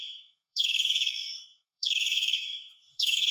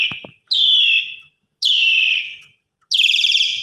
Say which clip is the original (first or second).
second